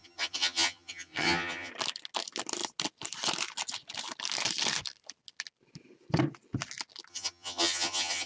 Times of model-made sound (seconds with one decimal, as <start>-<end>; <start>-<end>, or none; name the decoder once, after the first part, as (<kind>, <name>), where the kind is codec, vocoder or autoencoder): 0.0-1.7 (vocoder, HiFi-GAN); 7.1-8.3